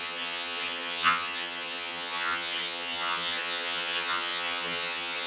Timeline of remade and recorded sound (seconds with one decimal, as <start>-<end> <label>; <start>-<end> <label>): 0.0-5.3 remade